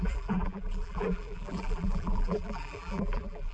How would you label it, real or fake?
fake